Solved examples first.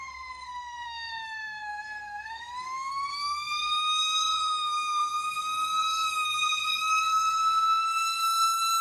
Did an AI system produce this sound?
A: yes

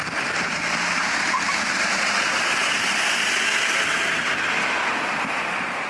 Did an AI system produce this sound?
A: yes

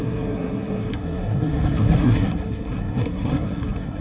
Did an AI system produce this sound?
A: yes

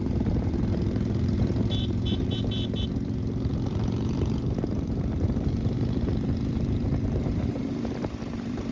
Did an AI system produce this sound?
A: yes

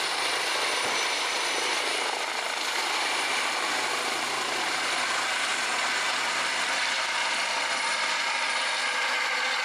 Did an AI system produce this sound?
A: no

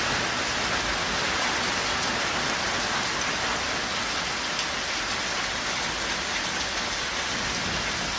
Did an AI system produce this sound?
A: no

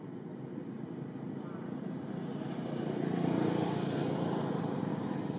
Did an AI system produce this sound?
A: no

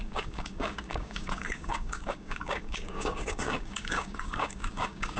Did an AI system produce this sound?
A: yes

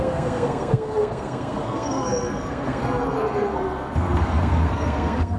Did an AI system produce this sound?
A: yes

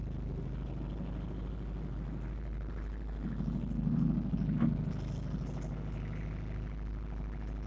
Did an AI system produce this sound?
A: no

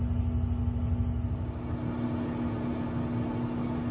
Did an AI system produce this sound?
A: no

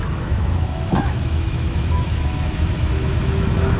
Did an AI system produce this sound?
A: yes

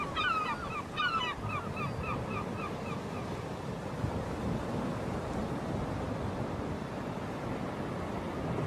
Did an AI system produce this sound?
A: no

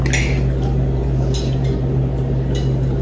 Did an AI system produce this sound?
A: no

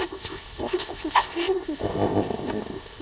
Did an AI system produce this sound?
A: yes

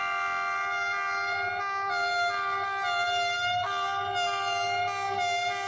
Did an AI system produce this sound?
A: no